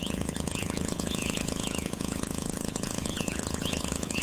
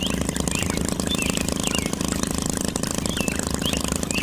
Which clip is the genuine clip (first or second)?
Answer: second